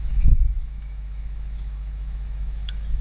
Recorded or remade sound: remade